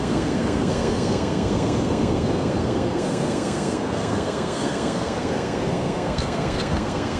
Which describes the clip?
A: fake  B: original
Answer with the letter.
A